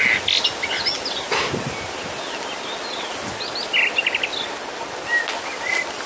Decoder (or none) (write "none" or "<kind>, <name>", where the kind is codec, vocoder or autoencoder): none